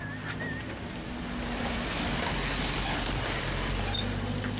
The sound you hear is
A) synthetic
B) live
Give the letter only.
B